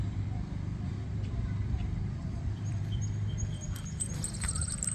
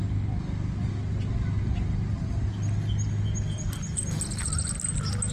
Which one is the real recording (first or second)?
second